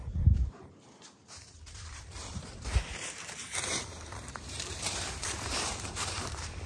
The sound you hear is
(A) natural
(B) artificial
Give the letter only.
B